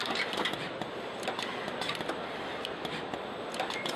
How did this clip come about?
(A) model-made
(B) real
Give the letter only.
A